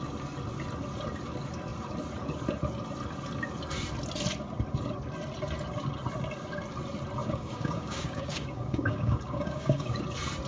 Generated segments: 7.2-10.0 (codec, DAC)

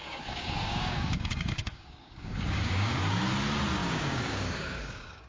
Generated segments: 0.0-3.2 (codec, DAC); 3.8-5.3

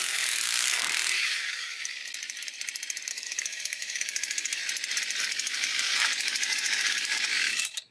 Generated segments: 0.0-2.0 (codec, DAC); 3.1-4.6; 5.2-7.9

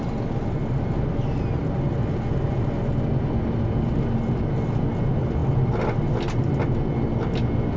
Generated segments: none

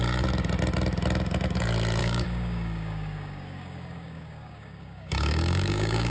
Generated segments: 2.0-6.1 (codec, DAC)

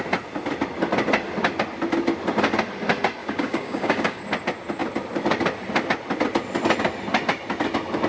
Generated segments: 3.2-4.2 (codec, DAC)

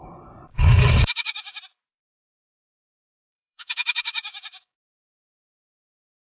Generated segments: 0.5-1.6 (codec, DAC); 3.3-5.5

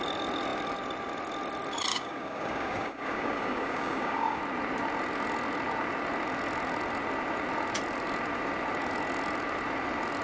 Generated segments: 1.9-4.4 (codec, DAC)